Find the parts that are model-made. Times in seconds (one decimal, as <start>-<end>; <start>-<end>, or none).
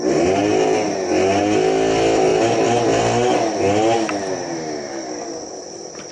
none